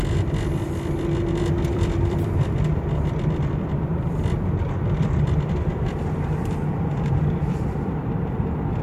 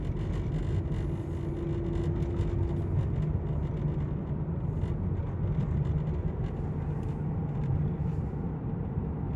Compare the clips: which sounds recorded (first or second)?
second